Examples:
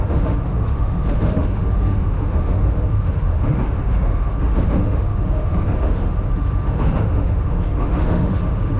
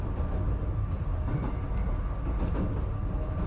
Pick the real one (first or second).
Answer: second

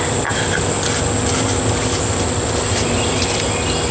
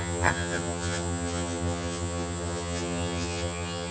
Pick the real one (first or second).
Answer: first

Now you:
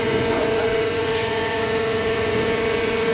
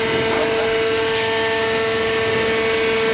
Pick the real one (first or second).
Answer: second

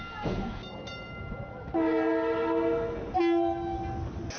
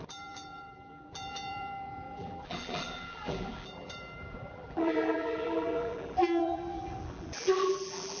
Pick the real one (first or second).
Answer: first